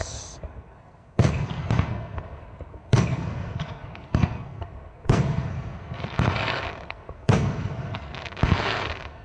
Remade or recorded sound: remade